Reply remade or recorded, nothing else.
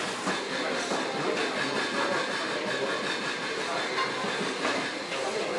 recorded